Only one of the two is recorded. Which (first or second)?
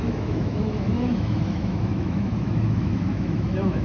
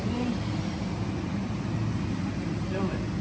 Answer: second